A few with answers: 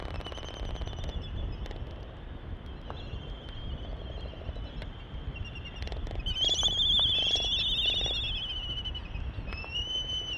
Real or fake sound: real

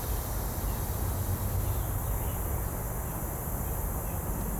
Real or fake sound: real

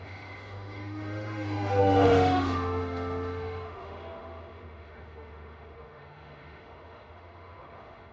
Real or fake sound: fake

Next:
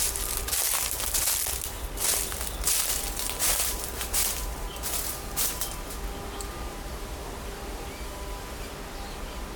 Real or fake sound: real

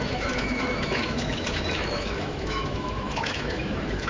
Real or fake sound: fake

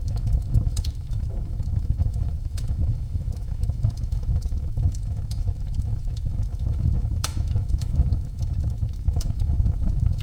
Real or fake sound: fake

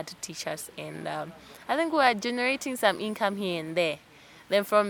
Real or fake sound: real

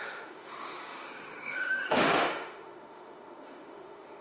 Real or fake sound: fake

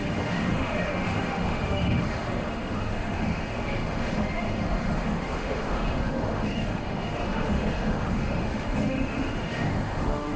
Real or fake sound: fake